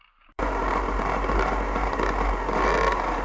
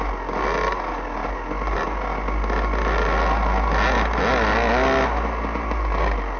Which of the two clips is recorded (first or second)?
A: second